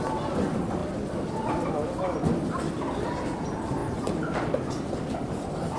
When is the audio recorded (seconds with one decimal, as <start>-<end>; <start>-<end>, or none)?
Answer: 0.0-3.8; 4.8-5.8